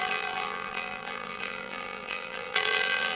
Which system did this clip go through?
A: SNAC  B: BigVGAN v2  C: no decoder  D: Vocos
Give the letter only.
B